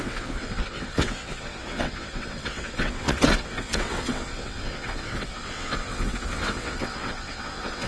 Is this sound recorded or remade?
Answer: remade